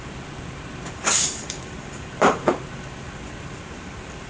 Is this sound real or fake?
fake